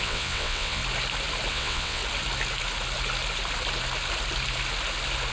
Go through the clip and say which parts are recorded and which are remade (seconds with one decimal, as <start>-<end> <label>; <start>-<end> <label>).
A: 0.0-0.8 remade; 0.8-1.5 recorded; 1.5-2.0 remade; 2.0-5.3 recorded